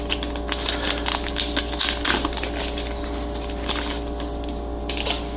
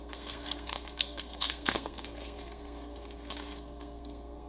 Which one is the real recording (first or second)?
first